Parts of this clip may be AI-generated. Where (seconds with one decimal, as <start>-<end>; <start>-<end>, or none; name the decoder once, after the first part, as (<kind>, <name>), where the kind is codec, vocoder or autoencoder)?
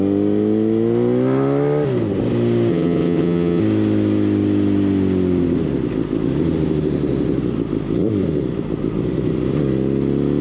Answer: 2.7-3.6 (vocoder, HiFi-GAN)